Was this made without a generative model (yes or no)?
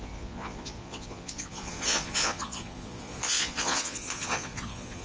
no